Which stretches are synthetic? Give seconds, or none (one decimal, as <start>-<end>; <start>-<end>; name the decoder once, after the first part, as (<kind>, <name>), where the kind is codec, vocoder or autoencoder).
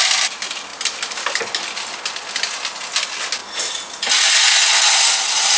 none